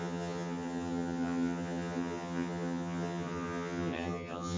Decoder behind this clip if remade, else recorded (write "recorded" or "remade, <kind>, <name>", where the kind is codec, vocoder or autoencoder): remade, vocoder, HiFi-GAN